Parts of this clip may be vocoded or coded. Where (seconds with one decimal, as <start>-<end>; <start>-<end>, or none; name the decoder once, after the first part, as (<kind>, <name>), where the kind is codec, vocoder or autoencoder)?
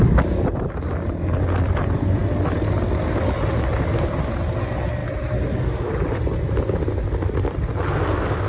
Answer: none